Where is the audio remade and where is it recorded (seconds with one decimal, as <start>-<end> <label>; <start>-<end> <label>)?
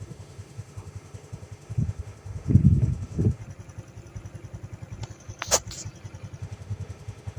0.0-3.4 remade; 3.4-6.4 recorded; 6.4-7.4 remade